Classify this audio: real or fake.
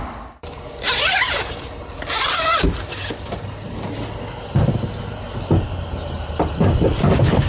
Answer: real